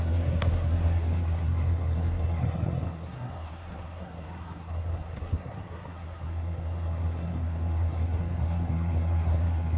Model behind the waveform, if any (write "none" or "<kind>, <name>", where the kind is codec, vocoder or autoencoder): codec, SNAC